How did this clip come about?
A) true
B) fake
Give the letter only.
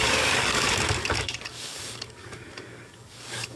B